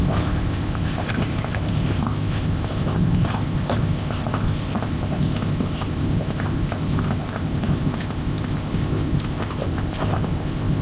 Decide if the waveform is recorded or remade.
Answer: remade